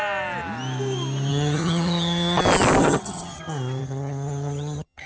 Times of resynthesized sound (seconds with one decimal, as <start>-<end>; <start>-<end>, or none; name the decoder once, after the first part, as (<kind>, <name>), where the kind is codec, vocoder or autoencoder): 1.3-2.4 (vocoder, HiFi-GAN); 2.8-3.4; 3.8-5.1